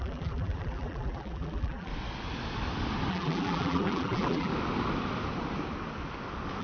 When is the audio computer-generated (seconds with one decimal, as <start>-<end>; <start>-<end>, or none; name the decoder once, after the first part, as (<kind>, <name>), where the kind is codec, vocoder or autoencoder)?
0.0-1.9 (vocoder, BigVGAN v2); 3.1-4.5